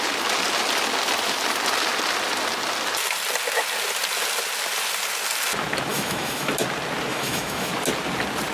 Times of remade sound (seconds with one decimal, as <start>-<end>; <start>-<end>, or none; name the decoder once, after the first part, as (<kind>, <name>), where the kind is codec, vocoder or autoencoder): 5.9-6.5 (autoencoder, DAC-VAE); 7.1-7.7